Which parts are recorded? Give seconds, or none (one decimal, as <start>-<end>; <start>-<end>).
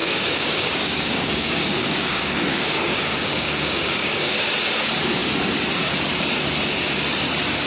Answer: 4.3-7.7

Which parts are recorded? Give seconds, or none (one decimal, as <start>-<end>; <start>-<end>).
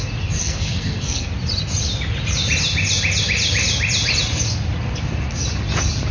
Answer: 0.0-0.4; 1.3-6.1